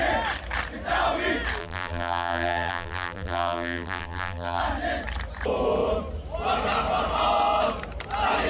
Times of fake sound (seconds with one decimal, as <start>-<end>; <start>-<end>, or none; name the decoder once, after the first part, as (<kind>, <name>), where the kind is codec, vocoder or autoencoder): 1.6-4.6 (vocoder, BigVGAN v2)